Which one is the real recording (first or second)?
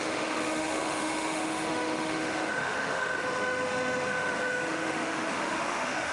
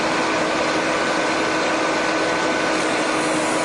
second